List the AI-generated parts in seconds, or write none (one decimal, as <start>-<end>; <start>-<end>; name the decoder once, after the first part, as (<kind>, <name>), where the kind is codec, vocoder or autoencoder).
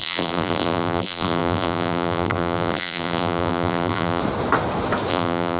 0.0-4.2 (vocoder, BigVGAN v2); 5.1-5.6